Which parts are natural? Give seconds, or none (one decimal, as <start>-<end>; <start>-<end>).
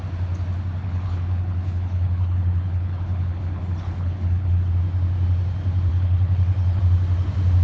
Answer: 0.0-0.8; 4.7-5.9; 6.8-7.6